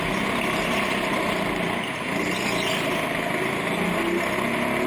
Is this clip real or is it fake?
real